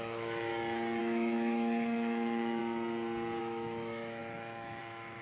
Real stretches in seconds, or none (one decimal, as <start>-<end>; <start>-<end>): 0.5-1.0; 2.6-3.4